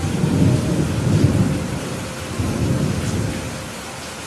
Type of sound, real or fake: real